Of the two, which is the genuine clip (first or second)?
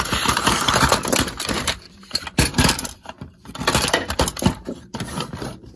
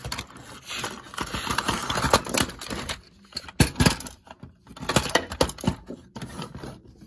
second